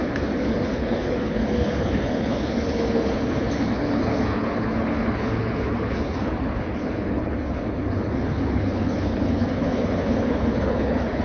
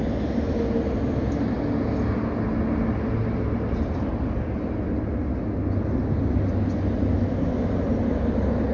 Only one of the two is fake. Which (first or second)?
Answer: first